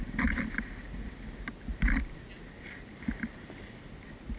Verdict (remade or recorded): recorded